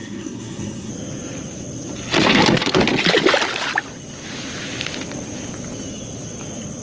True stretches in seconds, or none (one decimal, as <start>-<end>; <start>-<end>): 0.9-6.8